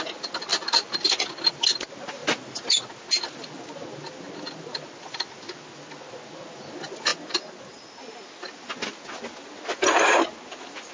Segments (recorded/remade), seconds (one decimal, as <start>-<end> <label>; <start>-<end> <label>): 0.0-10.9 recorded